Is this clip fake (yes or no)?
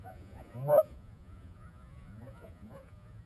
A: yes